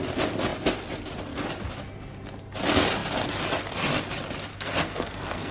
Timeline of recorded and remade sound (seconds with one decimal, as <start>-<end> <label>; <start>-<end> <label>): 0.0-4.5 recorded; 4.5-5.5 remade